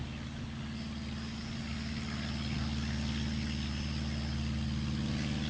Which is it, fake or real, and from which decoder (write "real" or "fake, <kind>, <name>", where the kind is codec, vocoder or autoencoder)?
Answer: real